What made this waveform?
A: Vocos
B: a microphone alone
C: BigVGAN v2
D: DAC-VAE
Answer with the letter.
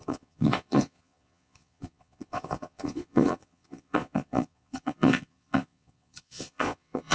A